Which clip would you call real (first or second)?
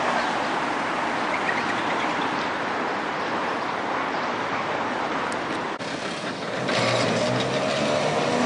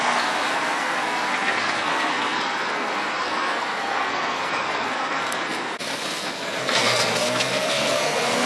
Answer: first